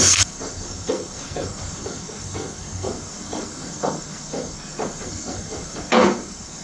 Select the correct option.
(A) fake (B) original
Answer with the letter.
A